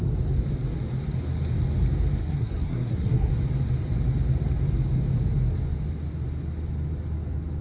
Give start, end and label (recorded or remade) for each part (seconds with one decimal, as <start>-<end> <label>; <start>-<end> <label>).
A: 0.0-2.2 recorded; 2.2-3.3 remade; 3.3-7.6 recorded